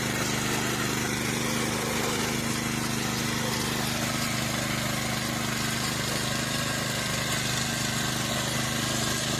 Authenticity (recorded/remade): recorded